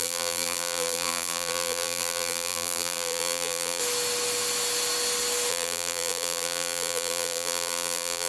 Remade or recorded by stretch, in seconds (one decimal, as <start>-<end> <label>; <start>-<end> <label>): 0.0-3.8 remade; 3.8-5.5 recorded; 5.5-8.3 remade